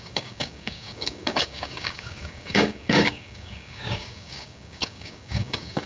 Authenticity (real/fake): fake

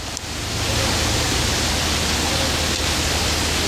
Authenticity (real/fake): real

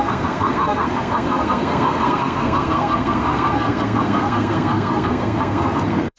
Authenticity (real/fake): fake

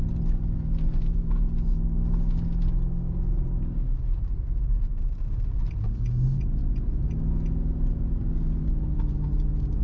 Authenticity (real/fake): real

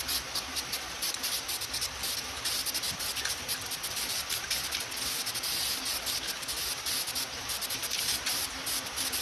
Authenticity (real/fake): real